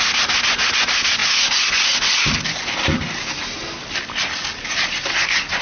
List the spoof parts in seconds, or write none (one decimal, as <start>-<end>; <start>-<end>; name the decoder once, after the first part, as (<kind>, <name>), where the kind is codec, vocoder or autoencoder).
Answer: none